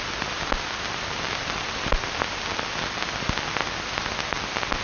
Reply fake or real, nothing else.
real